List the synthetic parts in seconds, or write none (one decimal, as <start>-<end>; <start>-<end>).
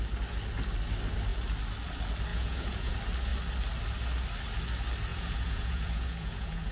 2.3-2.9; 5.1-6.7